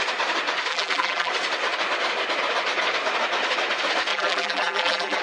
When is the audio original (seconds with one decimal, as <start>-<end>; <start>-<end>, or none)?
0.0-0.7; 1.3-4.1